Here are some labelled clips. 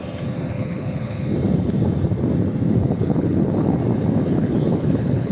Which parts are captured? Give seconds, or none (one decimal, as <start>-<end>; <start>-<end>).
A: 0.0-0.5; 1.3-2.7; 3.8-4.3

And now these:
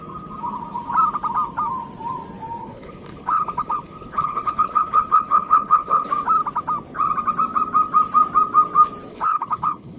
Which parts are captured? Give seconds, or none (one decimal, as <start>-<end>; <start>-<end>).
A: 0.0-2.6; 6.1-9.1

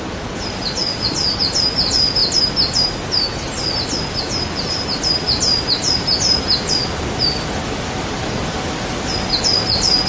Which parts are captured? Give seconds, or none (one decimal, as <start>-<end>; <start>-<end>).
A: 0.0-10.1

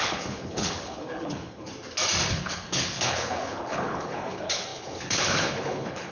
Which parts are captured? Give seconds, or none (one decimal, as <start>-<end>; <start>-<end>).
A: 1.7-2.3

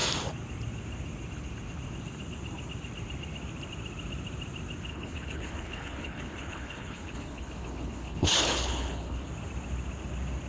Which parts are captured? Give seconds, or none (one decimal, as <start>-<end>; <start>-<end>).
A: 0.0-4.9; 9.3-10.5

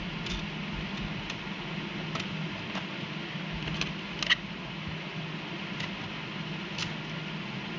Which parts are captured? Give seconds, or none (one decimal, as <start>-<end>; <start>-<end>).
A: 0.0-7.8

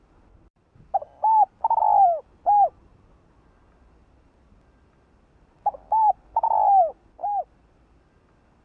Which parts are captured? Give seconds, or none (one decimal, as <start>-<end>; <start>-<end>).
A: 0.0-8.6